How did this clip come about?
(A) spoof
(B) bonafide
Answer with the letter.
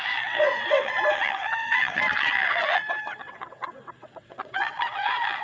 A